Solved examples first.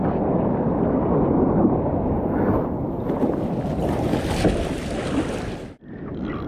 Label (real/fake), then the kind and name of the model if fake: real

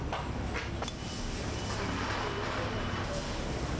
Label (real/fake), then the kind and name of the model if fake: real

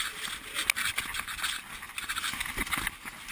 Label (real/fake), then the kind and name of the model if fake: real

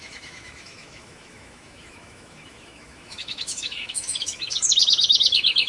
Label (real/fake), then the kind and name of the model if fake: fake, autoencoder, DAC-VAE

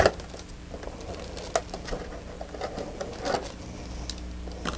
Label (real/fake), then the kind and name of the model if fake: real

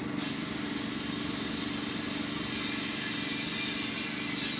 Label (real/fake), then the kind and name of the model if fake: real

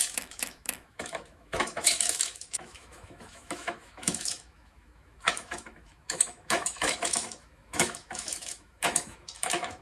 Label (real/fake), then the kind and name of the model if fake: fake, autoencoder, DAC-VAE